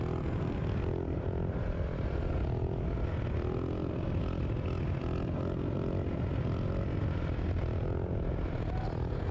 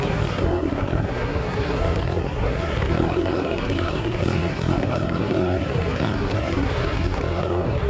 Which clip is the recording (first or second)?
first